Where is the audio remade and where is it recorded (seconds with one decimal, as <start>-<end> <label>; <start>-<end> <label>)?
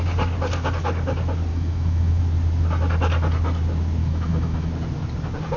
0.0-1.5 recorded; 1.5-2.2 remade; 2.2-4.0 recorded; 4.0-4.7 remade; 4.7-5.6 recorded